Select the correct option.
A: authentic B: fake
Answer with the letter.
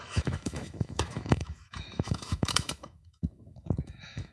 B